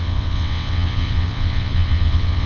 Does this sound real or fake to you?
fake